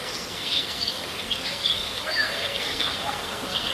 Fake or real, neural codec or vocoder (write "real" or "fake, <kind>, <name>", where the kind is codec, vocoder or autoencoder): fake, codec, SNAC